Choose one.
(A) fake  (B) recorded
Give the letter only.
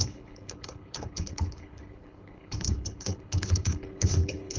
A